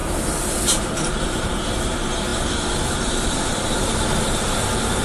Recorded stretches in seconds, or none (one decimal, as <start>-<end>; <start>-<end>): 3.9-5.0